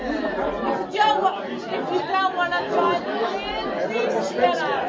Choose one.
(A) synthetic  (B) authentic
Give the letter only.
B